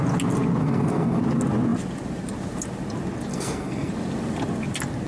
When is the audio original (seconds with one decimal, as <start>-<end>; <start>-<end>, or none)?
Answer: 0.0-0.6; 1.2-3.3; 3.9-5.1

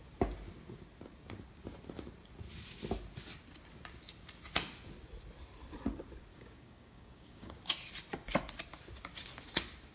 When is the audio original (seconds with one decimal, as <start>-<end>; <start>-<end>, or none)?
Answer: 0.0-6.3; 7.5-9.9

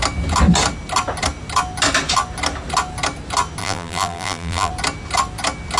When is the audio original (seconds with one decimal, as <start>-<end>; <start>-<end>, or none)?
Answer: 0.0-3.6; 4.7-5.8

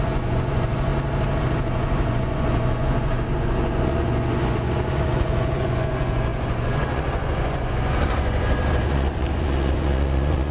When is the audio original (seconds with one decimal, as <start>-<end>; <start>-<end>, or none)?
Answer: 0.9-1.4

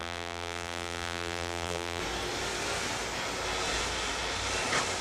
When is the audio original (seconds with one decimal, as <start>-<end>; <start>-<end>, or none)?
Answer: 2.0-5.0

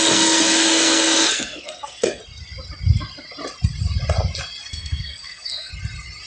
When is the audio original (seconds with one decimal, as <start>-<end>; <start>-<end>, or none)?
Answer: 2.2-4.6; 5.7-6.3